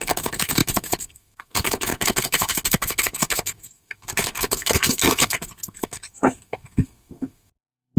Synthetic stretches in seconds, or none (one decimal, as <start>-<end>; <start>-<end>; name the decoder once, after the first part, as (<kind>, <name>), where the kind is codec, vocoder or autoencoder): 0.0-8.0 (codec, SNAC)